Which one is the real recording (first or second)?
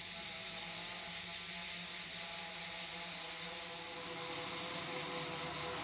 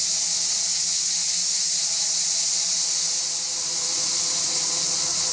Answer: first